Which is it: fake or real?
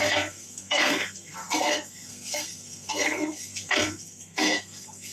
fake